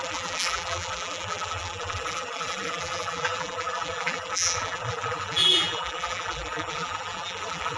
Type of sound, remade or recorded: remade